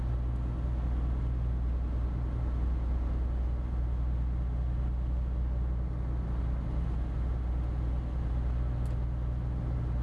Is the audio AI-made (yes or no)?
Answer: no